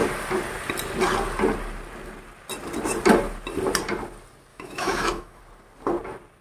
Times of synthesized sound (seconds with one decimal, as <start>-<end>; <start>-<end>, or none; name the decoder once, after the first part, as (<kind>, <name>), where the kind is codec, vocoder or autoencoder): 4.5-5.4 (autoencoder, DAC-VAE)